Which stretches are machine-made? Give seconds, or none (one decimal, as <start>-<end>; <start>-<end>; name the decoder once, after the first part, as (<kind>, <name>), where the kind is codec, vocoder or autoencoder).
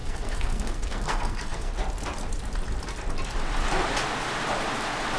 0.0-1.7 (codec, SNAC)